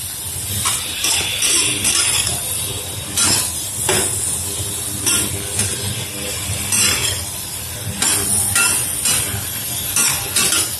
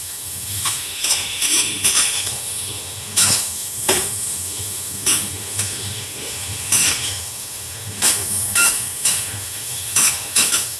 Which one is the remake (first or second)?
second